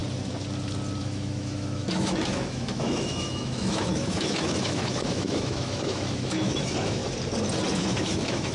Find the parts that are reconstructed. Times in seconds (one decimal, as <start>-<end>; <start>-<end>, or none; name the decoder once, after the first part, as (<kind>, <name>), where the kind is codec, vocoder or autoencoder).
1.0-7.0 (autoencoder, DAC-VAE); 7.7-8.5